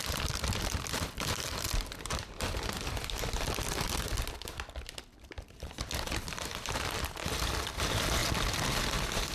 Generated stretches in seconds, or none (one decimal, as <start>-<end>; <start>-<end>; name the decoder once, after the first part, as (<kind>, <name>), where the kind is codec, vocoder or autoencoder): 0.0-8.2 (vocoder, BigVGAN v2)